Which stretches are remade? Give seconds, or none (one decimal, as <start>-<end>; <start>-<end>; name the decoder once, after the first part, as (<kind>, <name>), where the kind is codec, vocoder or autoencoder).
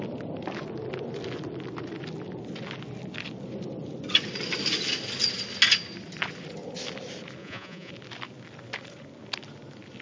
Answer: 7.4-7.9 (vocoder, Vocos)